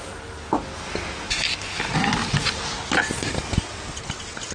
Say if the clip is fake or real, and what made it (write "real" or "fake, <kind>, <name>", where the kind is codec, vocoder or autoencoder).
real